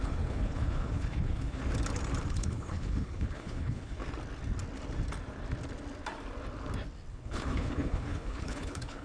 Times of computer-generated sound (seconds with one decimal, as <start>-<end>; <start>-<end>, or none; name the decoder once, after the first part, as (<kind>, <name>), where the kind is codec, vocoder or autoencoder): 0.0-1.6 (codec, HILCodec); 2.3-4.0; 7.1-9.0

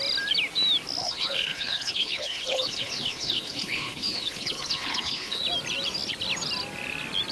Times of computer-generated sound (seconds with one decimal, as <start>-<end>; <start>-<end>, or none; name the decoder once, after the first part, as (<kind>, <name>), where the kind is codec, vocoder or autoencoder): 1.0-5.4 (codec, HILCodec)

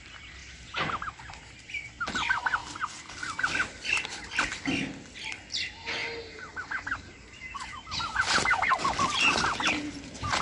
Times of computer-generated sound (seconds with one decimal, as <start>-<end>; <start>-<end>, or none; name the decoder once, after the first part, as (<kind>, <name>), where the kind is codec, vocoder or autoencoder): none

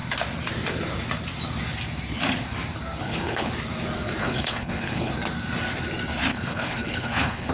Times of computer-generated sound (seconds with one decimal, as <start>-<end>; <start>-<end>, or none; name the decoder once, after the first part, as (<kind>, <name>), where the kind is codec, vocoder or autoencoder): 3.0-3.5 (codec, HILCodec); 4.2-5.1; 6.3-7.5

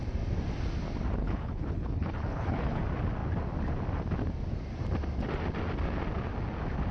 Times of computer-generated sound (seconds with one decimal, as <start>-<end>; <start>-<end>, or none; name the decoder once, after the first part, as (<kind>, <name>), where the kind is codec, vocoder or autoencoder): 1.2-2.8 (codec, HILCodec)

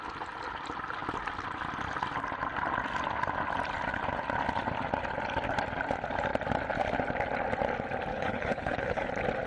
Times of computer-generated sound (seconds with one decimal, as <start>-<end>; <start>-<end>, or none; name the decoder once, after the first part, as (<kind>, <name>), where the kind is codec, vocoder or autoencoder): 8.1-9.1 (codec, HILCodec)